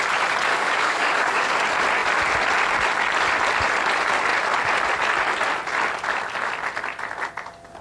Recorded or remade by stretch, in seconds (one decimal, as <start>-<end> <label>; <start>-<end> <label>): 0.0-0.5 recorded; 0.5-1.5 remade; 1.5-7.8 recorded